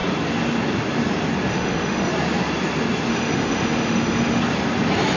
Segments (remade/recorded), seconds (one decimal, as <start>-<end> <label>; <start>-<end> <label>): 0.0-1.5 recorded; 1.5-2.1 remade; 2.1-3.1 recorded; 3.1-4.4 remade; 4.4-5.2 recorded